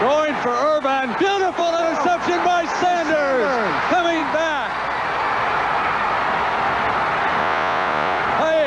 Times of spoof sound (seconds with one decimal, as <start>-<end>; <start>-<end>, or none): 7.4-8.2